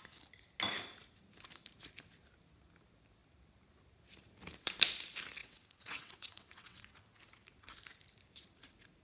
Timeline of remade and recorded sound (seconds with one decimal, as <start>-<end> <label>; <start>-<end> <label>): 0.0-5.4 recorded; 5.4-6.9 remade; 6.9-9.0 recorded